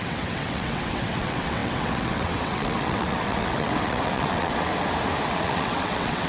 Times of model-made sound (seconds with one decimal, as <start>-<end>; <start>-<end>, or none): 0.0-4.7; 5.3-6.3